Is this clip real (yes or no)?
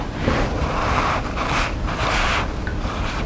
yes